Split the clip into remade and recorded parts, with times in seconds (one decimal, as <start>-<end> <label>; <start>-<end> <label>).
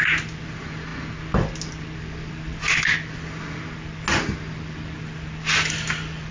0.0-6.3 recorded